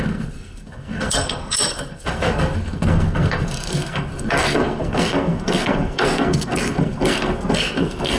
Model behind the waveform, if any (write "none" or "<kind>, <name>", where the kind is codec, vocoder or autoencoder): codec, SNAC